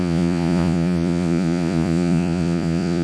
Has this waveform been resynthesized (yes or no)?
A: yes